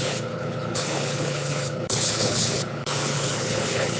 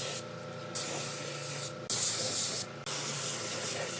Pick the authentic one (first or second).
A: second